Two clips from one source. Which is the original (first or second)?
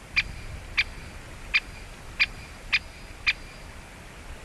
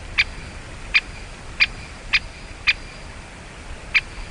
first